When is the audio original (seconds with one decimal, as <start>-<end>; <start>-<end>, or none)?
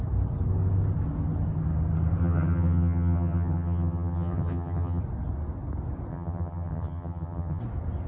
0.0-2.2; 5.0-6.1; 7.6-8.1